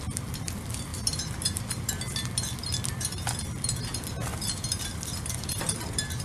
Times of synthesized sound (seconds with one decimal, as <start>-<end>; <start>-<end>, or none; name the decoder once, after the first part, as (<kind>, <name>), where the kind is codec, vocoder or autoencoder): none